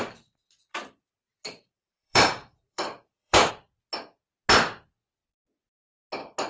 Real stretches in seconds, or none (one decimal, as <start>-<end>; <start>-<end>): 0.0-0.7; 3.5-6.5